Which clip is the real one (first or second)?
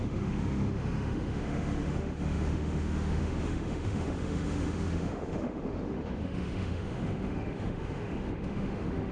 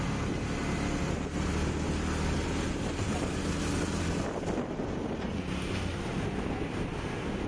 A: second